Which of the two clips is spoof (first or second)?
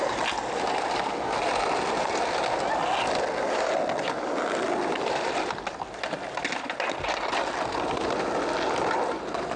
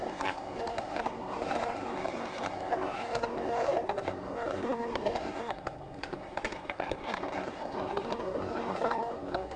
second